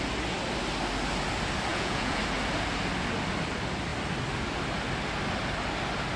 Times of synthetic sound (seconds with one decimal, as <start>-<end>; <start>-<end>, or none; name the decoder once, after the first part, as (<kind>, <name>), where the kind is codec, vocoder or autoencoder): 1.7-2.2 (vocoder, Vocos)